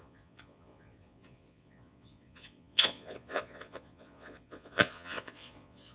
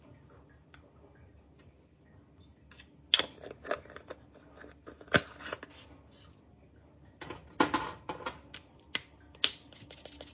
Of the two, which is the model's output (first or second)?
first